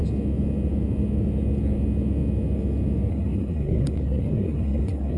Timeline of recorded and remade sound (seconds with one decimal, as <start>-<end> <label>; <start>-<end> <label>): 0.0-3.1 recorded; 3.1-5.2 remade